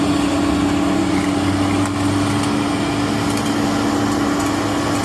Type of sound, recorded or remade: recorded